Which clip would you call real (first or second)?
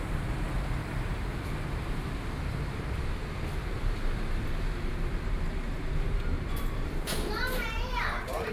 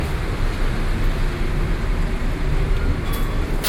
second